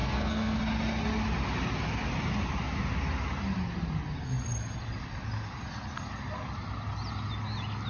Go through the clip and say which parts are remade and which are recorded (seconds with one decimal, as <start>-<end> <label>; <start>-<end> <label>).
0.0-0.6 remade; 0.6-7.9 recorded